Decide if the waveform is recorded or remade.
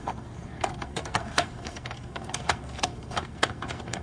remade